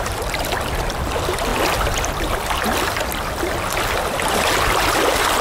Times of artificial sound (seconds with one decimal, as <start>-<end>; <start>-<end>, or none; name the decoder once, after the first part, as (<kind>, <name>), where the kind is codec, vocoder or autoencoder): none